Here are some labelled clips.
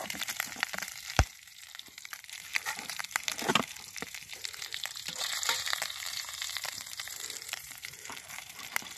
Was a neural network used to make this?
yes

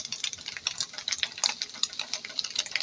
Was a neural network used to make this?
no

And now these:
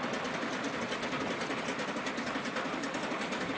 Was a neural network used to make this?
no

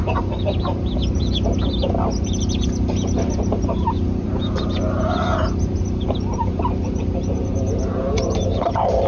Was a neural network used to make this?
no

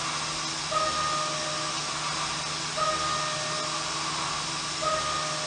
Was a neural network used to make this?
no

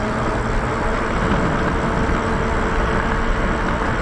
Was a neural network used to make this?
no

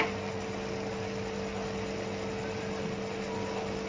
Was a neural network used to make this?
no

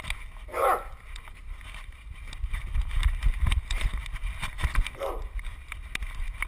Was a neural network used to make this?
yes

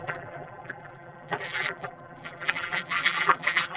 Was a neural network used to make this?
yes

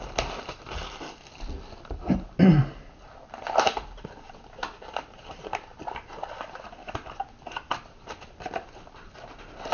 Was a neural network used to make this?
no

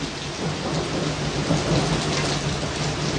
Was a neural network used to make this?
no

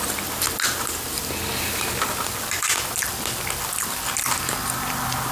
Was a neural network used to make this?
no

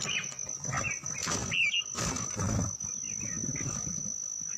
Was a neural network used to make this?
no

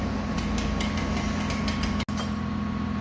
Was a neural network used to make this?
no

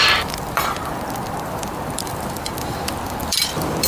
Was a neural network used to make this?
yes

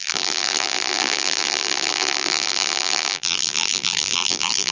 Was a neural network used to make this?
yes